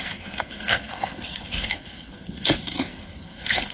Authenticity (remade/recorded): remade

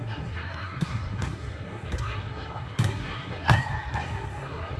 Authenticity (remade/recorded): remade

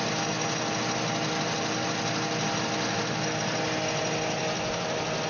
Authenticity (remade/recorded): recorded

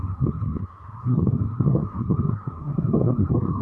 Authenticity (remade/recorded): remade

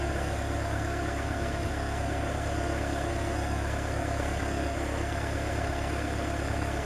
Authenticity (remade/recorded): remade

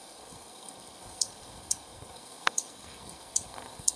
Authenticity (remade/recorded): remade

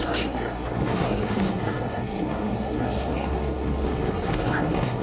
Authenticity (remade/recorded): remade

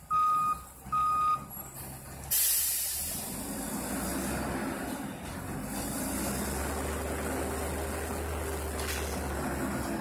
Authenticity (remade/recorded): recorded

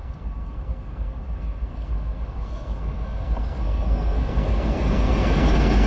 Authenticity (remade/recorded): remade